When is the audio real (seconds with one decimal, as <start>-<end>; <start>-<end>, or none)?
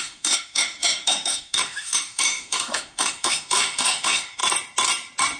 4.4-5.4